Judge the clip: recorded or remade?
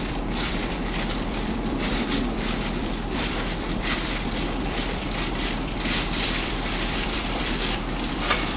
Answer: remade